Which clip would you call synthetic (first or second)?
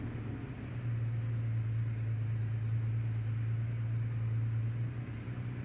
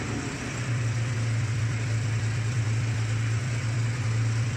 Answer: second